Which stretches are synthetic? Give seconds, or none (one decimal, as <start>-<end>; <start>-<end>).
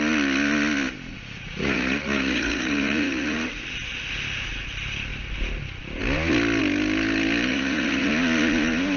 1.1-3.9; 7.5-8.1